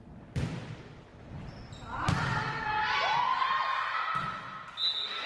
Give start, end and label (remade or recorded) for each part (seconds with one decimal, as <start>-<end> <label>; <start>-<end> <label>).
0.0-5.3 recorded